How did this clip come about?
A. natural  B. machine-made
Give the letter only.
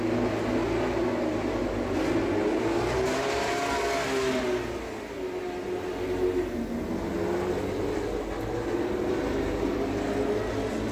A